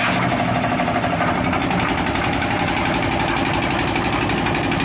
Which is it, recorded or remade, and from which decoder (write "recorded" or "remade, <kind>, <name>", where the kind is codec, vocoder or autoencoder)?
recorded